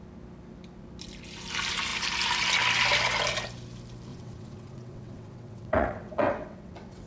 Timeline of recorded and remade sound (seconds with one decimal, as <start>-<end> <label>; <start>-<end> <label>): 0.0-4.1 recorded; 4.1-7.1 remade